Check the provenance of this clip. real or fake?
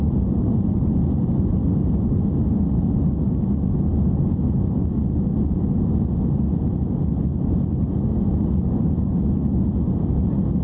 real